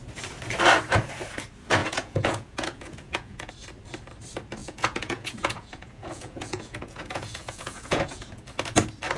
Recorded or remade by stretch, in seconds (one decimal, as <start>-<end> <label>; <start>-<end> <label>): 0.0-1.8 recorded; 1.8-3.5 remade; 3.5-4.6 recorded; 4.6-8.4 remade; 8.4-9.2 recorded